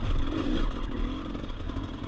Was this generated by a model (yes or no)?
no